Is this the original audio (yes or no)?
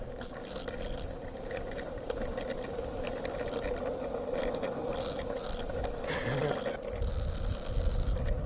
yes